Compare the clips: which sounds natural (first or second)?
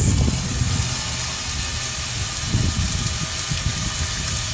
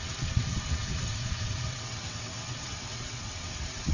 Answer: first